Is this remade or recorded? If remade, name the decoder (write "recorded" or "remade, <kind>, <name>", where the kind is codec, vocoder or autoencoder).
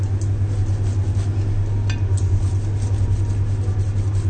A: recorded